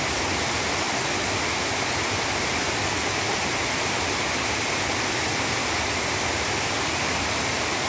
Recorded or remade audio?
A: recorded